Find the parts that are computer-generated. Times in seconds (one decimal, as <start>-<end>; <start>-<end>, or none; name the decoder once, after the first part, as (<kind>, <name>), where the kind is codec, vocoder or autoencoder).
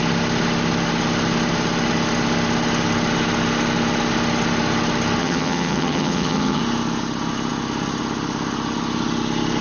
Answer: 5.2-6.6 (vocoder, HiFi-GAN)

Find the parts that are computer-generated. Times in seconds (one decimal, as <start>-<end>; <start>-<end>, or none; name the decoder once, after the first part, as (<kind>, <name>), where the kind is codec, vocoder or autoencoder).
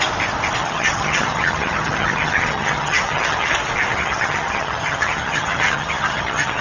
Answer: 0.6-3.5 (vocoder, HiFi-GAN); 3.9-6.6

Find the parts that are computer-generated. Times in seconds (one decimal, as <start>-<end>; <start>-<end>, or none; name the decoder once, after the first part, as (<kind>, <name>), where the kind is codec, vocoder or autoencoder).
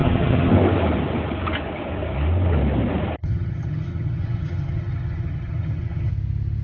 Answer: 0.0-0.5 (vocoder, HiFi-GAN); 3.2-6.1